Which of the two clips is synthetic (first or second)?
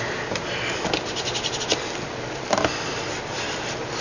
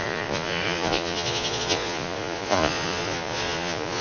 second